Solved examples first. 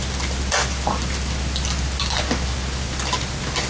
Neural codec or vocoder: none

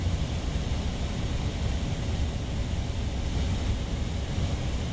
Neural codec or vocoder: none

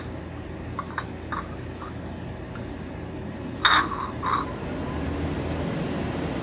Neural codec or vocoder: none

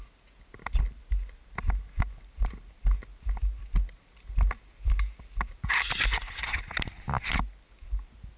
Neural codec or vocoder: none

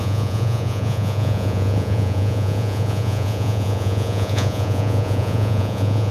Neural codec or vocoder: vocoder, Vocos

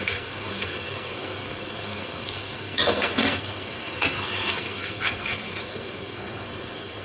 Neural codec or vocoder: codec, SNAC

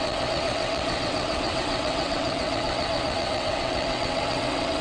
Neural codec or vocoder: vocoder, WaveNeXt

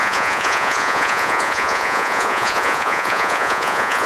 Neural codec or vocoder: vocoder, Vocos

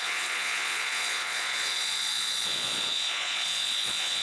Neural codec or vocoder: vocoder, Vocos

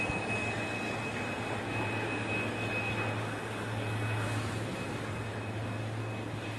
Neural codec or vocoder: none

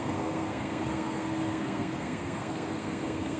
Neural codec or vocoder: codec, SNAC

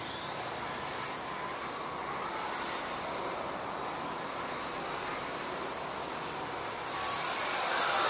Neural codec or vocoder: none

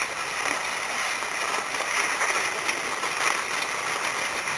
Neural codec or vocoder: none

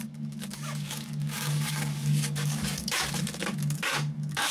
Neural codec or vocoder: codec, DAC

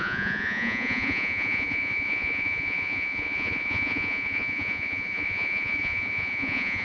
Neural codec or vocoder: vocoder, Vocos